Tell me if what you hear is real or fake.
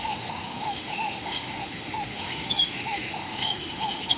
fake